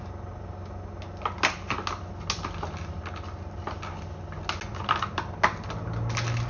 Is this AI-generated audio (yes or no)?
no